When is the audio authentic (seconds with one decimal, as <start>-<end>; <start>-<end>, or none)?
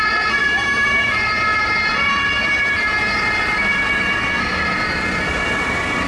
0.0-0.4; 1.1-6.1